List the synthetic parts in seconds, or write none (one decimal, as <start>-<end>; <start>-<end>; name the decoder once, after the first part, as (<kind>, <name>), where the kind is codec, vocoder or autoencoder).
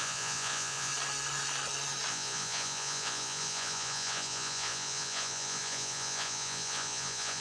0.0-0.9 (vocoder, Vocos); 2.1-7.4